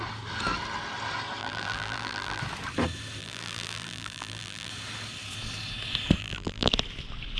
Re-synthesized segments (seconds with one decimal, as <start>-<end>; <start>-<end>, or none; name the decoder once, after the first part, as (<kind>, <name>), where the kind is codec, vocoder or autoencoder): 1.4-2.4 (vocoder, BigVGAN v2); 3.2-4.7; 6.2-6.7